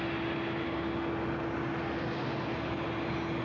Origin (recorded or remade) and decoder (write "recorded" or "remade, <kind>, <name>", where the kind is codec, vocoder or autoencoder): recorded